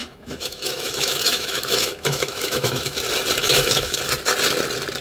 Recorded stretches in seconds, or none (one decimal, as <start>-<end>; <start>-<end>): 3.0-3.4; 4.0-5.0